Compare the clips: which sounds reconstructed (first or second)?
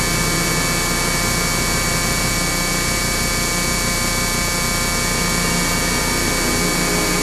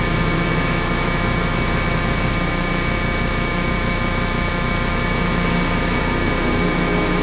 second